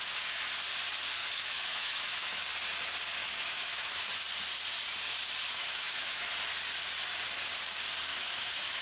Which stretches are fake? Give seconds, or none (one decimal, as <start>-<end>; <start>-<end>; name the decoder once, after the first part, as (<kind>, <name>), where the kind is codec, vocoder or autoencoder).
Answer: 1.2-2.4 (autoencoder, DAC-VAE); 3.2-4.1; 5.6-6.3; 8.1-8.8